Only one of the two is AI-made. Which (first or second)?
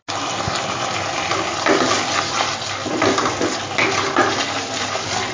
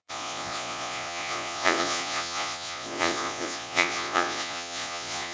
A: second